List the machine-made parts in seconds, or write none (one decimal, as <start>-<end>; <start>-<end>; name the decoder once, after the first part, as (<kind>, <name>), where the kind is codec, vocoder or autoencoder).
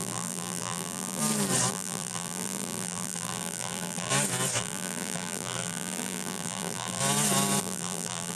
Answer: 0.0-1.2 (vocoder, BigVGAN v2); 1.7-4.1; 4.6-7.0; 7.6-8.4